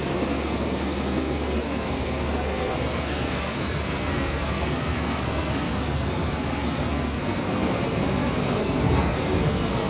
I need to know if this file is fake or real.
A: fake